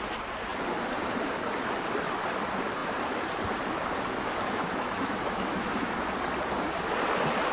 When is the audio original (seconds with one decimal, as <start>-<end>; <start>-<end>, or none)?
0.0-4.2; 6.0-7.5